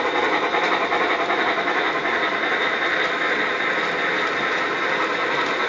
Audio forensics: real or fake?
real